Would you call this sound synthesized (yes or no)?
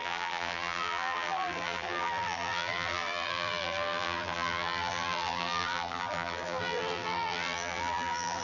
yes